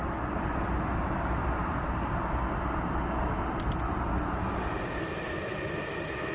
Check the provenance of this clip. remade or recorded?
recorded